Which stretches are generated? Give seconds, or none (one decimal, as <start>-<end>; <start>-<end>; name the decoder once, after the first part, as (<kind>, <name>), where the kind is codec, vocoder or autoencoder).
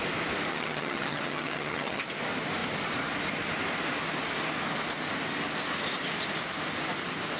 0.5-2.0 (vocoder, HiFi-GAN)